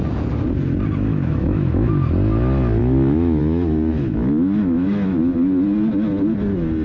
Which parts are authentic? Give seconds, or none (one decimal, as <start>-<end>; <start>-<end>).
0.0-1.1; 1.9-2.8; 3.4-3.9; 5.2-6.8

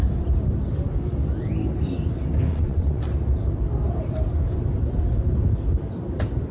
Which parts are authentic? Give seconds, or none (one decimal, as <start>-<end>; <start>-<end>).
0.0-2.5; 3.0-6.5

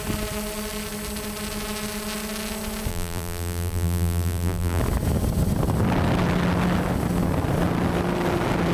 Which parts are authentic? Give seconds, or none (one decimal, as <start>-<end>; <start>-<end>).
0.0-2.9; 4.8-8.7

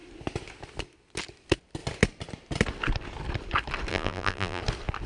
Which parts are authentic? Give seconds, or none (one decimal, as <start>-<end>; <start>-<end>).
0.0-3.9; 4.6-5.1

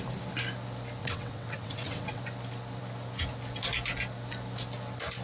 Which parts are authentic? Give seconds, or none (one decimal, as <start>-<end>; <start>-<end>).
0.0-1.0; 2.2-5.2